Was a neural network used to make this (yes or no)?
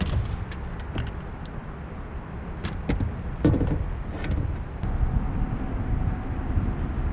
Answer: no